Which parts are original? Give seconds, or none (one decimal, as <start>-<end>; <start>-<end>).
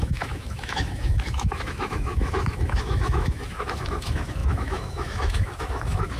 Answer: none